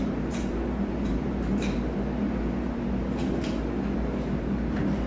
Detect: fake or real fake